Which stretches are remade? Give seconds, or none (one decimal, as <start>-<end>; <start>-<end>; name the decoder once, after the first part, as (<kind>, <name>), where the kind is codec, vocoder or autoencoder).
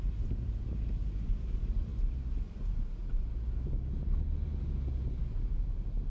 0.0-1.9 (vocoder, BigVGAN v2); 2.5-3.0; 5.5-6.1